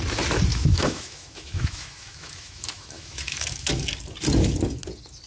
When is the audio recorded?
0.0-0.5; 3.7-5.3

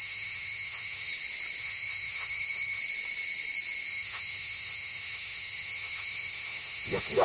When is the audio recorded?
1.1-1.6; 2.8-3.9

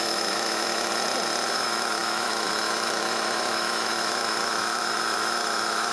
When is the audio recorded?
0.9-1.5

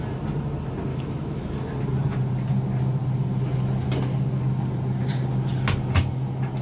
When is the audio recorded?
0.0-0.9; 1.5-6.6

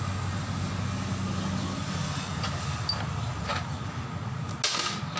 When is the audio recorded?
0.0-5.2

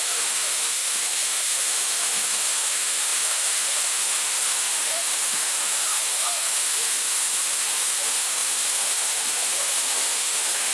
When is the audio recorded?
none

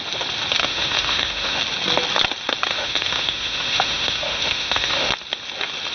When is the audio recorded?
0.0-0.6; 1.6-2.7; 5.1-5.9

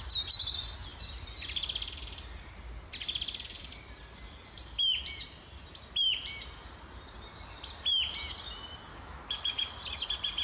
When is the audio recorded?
0.0-8.9; 9.7-10.4